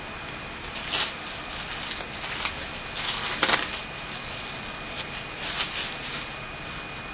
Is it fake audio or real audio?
real